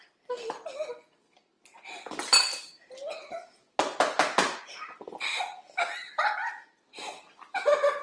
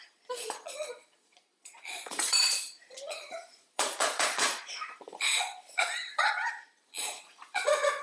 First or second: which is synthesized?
second